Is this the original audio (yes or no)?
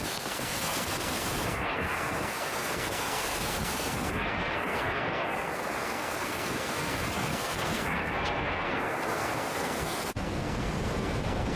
no